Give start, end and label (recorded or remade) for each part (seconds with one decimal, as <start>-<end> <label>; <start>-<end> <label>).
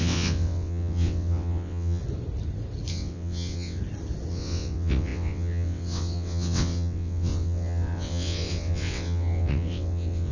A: 0.0-2.0 remade; 2.0-2.9 recorded; 2.9-3.8 remade; 3.8-4.3 recorded; 4.3-10.3 remade